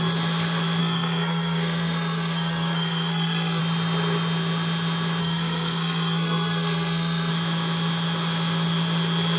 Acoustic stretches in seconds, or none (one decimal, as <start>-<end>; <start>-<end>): 0.0-0.8; 3.6-5.2; 7.3-9.4